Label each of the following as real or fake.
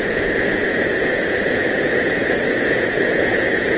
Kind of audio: fake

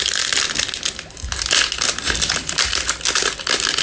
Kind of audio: real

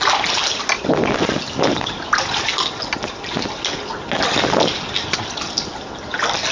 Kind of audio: real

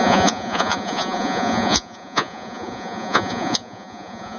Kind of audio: fake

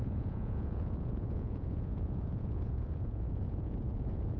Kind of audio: fake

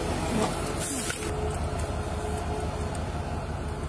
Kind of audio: real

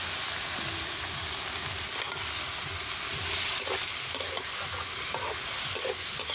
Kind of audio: real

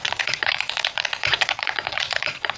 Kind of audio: fake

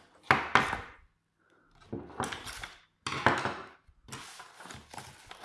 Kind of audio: real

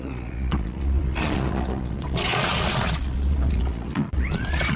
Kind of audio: fake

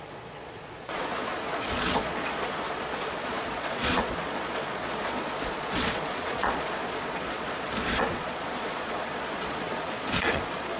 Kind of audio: fake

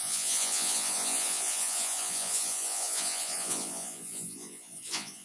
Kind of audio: fake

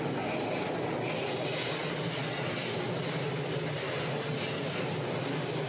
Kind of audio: real